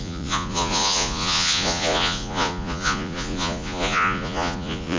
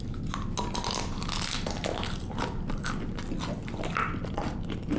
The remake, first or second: first